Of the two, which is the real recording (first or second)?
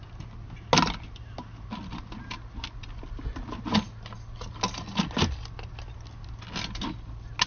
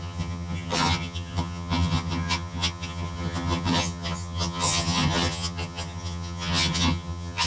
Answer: first